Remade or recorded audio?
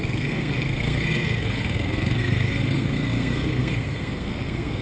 remade